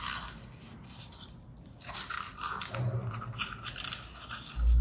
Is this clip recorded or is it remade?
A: recorded